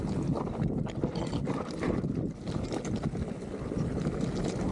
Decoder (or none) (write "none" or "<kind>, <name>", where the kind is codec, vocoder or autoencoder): none